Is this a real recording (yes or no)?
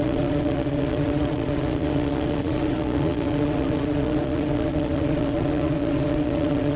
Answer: no